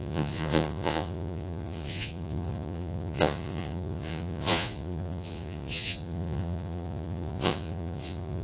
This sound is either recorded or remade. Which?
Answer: remade